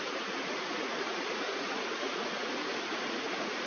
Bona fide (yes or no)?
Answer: no